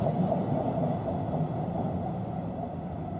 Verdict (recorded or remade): recorded